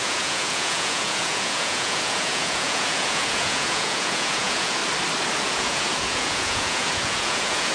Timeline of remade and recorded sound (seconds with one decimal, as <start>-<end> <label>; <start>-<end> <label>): 0.0-4.8 remade; 4.8-5.4 recorded; 5.4-7.7 remade